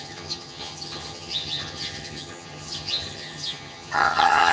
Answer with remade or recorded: remade